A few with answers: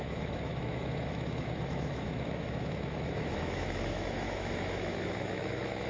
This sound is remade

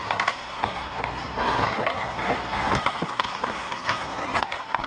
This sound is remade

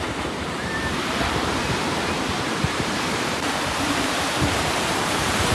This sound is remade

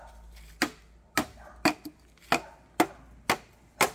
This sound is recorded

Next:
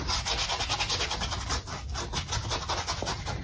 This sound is recorded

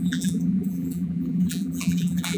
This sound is remade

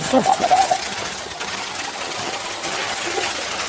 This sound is remade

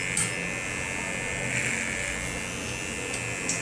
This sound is recorded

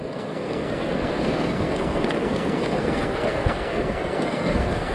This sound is remade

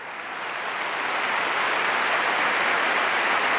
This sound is recorded